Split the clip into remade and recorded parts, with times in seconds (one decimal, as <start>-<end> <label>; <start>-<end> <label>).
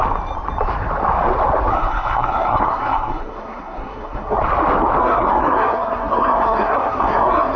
0.0-1.7 recorded; 1.7-4.4 remade; 4.4-5.0 recorded; 5.0-7.6 remade